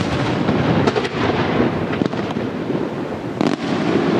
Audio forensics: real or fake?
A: real